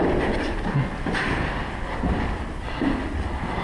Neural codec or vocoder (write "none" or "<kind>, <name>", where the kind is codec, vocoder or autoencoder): none